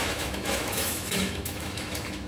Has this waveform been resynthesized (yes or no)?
yes